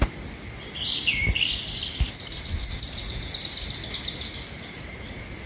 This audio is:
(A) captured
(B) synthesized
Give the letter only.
A